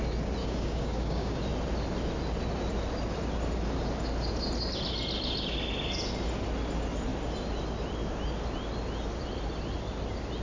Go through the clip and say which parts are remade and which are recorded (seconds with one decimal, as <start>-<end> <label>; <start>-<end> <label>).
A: 0.0-0.4 recorded; 0.4-1.4 remade; 1.4-10.4 recorded